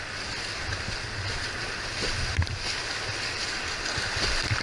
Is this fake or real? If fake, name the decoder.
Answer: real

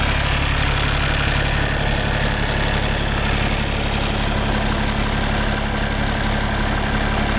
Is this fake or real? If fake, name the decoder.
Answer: real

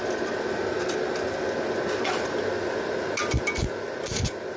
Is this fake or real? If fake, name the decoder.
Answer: real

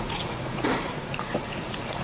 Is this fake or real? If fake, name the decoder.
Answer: fake, vocoder, Vocos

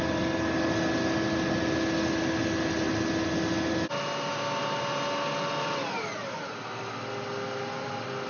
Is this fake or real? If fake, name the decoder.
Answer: real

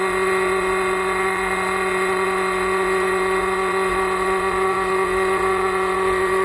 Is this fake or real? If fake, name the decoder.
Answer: fake, vocoder, Vocos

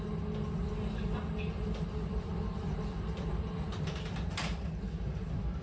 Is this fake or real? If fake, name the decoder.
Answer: real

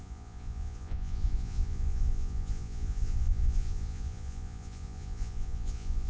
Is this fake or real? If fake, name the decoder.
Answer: fake, vocoder, Vocos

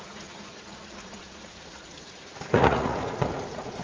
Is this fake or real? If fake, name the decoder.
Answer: fake, vocoder, Vocos